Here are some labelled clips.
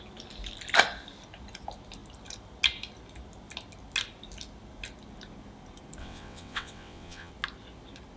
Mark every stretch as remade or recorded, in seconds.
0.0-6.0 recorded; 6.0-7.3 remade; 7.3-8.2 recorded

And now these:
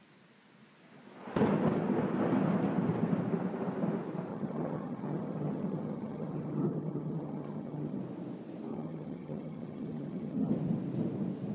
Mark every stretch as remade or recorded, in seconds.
0.0-4.3 recorded; 4.3-8.0 remade; 8.0-8.7 recorded; 8.7-10.5 remade; 10.5-11.5 recorded